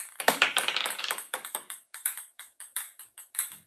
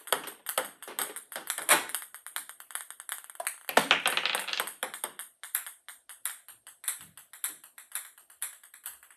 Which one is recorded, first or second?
second